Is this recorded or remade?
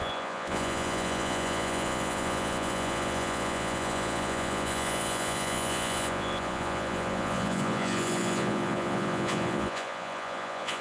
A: remade